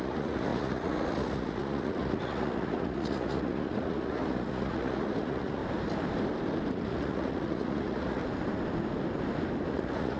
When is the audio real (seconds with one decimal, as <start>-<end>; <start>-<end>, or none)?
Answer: 5.6-6.7; 8.2-9.7